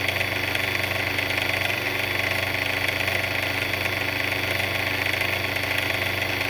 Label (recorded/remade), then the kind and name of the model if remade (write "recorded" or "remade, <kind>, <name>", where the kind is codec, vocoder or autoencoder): recorded